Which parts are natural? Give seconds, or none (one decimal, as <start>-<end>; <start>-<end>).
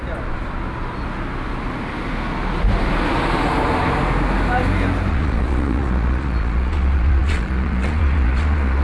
0.0-5.1